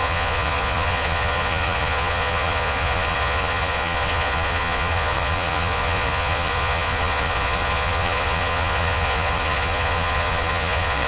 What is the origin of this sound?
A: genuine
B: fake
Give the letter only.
B